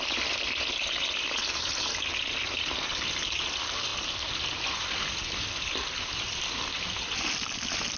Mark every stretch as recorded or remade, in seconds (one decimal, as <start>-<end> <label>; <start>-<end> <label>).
0.0-8.0 recorded